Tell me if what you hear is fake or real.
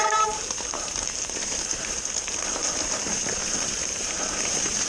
fake